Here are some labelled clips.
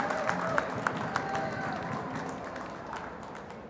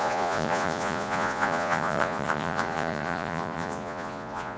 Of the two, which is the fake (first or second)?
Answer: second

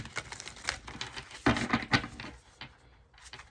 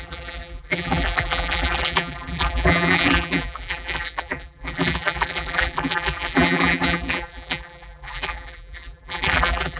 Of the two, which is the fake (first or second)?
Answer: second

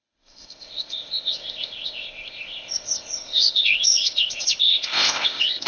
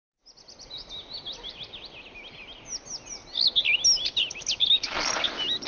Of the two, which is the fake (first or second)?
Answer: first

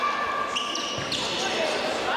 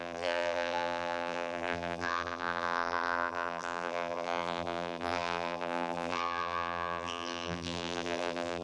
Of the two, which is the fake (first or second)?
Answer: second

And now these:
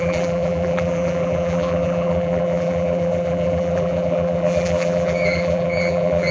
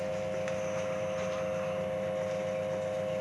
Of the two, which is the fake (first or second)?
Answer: first